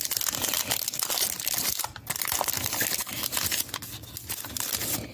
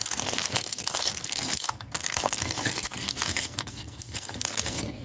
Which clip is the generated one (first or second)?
second